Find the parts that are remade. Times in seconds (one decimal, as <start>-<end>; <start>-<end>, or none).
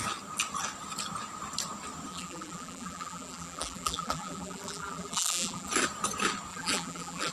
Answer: 2.1-5.7; 6.5-7.3